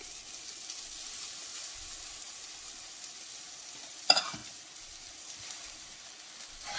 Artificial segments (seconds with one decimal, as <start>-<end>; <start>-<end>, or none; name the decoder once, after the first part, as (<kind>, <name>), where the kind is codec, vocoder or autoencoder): 4.4-6.0 (vocoder, BigVGAN v2)